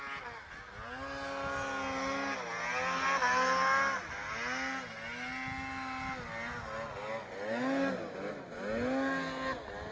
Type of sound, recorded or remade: recorded